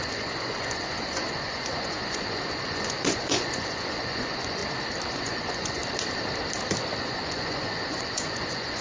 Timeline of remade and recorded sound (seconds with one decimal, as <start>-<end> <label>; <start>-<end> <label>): 0.0-4.6 remade; 4.6-5.1 recorded; 5.1-5.8 remade; 5.8-7.0 recorded; 7.0-8.8 remade